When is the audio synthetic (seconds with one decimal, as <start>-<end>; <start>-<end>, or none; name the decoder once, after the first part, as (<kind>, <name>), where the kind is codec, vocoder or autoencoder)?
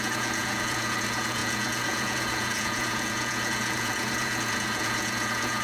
0.0-5.6 (vocoder, Vocos)